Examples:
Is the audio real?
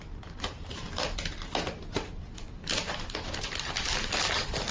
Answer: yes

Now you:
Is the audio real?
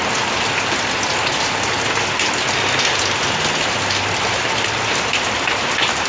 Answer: yes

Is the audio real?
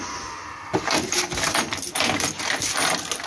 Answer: yes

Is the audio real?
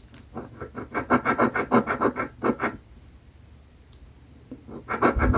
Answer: yes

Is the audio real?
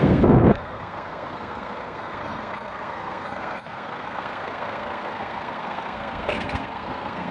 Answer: no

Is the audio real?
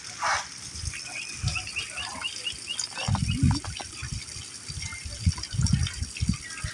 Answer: yes